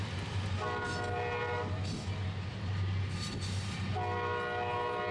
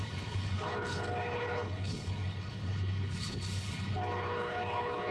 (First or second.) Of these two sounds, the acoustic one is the first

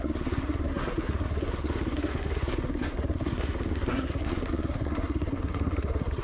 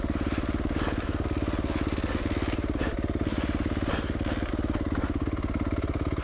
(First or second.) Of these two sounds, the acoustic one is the second